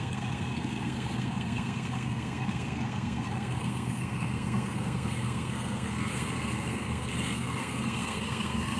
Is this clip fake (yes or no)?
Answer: yes